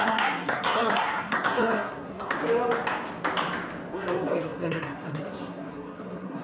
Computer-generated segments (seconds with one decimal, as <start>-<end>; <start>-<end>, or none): 0.0-2.4; 3.9-6.4